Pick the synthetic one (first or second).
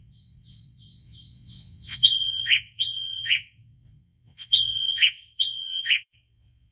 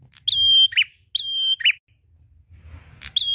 first